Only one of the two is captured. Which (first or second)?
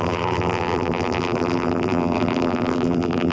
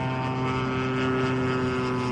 second